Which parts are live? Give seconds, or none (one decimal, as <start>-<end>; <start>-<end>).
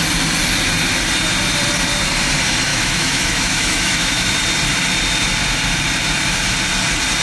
0.0-2.7; 4.3-7.2